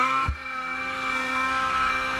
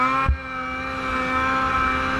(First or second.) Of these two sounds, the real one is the second